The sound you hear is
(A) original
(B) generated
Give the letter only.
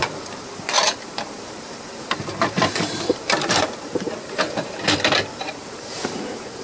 B